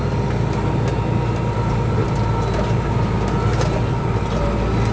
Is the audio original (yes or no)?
yes